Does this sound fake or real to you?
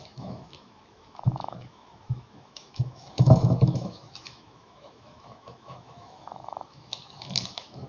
fake